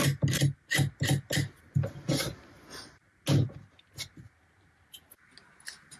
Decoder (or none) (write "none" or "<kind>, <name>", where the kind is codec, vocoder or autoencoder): none